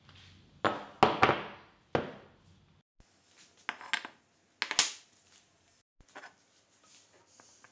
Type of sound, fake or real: real